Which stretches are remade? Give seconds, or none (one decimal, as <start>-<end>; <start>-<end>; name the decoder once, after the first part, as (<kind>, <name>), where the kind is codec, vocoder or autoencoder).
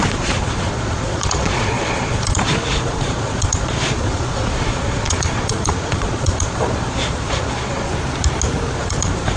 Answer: 0.0-7.9 (vocoder, Vocos); 8.7-9.4